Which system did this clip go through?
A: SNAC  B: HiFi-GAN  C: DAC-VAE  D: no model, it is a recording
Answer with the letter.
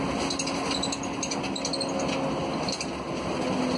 D